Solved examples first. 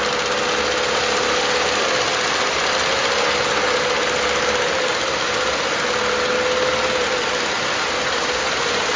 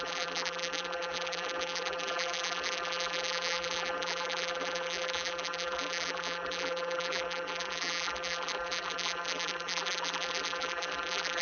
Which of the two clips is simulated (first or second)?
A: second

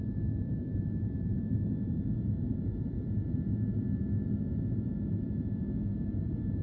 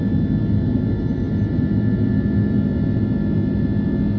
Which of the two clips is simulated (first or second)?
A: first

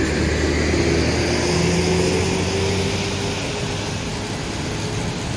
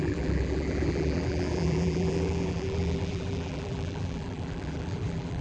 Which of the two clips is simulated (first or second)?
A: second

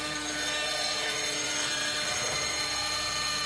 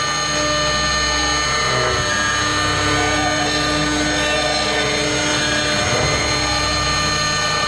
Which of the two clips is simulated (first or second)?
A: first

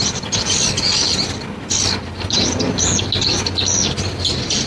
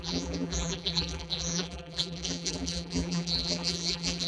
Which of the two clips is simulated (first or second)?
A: second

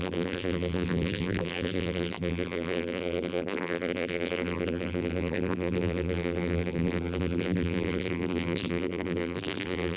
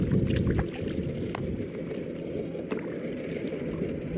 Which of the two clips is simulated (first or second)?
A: first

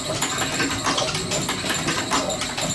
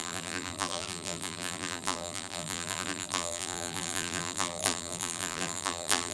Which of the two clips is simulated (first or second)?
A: second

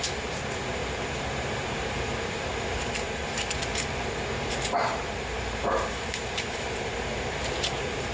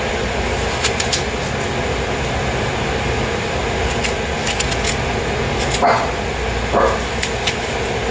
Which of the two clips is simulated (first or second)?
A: first